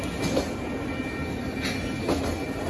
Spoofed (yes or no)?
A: no